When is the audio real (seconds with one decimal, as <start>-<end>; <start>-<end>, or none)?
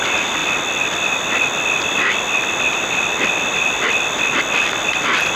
0.0-5.4